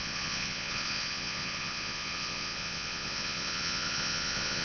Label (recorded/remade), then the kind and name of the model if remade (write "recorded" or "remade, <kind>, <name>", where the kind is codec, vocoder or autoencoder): remade, vocoder, Vocos